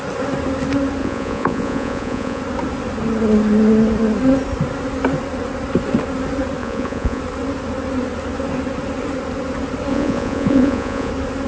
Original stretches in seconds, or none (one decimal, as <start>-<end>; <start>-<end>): 0.0-1.0; 2.4-6.6; 7.2-9.9; 11.1-11.5